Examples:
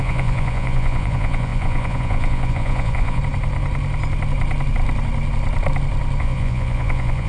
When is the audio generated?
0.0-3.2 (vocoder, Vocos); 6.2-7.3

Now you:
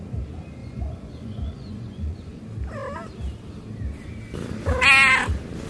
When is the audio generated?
0.6-2.4 (vocoder, Vocos)

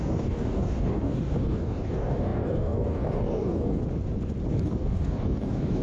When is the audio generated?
0.0-3.8 (codec, DAC); 4.5-5.8

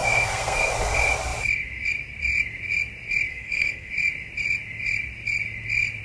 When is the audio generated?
0.0-0.7 (codec, SNAC); 3.3-3.9

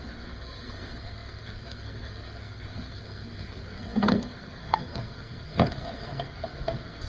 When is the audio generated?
0.0-7.1 (codec, SNAC)

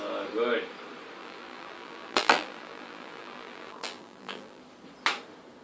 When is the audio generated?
1.2-4.6 (vocoder, BigVGAN v2)

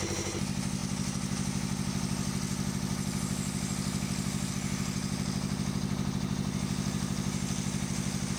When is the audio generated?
none